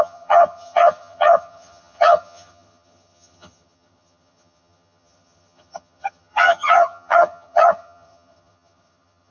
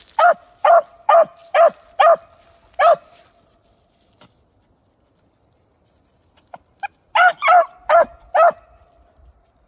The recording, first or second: second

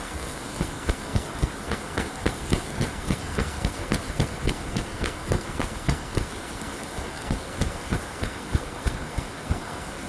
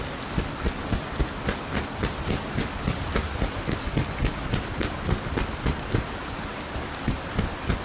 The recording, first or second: second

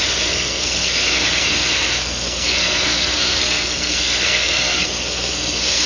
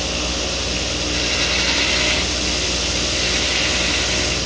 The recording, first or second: second